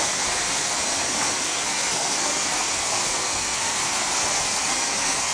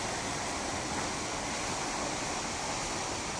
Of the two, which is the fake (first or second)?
first